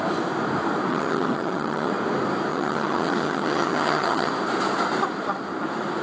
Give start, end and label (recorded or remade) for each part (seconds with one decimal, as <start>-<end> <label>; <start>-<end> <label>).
0.0-0.9 recorded; 0.9-1.9 remade; 1.9-2.5 recorded; 2.5-4.3 remade; 4.3-6.0 recorded